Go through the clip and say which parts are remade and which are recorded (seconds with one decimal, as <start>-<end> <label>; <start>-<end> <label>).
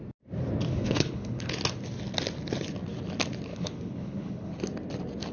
0.0-0.7 recorded; 0.7-1.5 remade; 1.5-3.5 recorded; 3.5-4.6 remade; 4.6-5.3 recorded